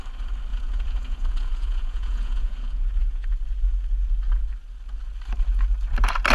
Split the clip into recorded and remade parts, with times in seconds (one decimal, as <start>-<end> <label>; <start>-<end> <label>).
0.0-0.5 recorded; 0.5-3.3 remade; 3.3-6.3 recorded